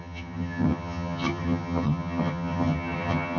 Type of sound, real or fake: fake